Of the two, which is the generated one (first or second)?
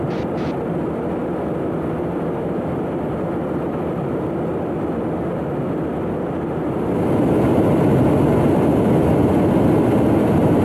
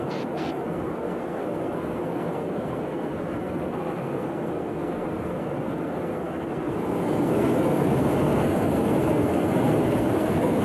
second